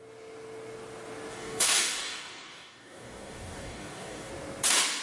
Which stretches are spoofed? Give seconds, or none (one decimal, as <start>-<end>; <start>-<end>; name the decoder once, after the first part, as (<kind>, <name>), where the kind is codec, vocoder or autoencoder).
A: 1.3-4.3 (codec, DAC)